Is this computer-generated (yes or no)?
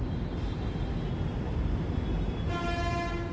no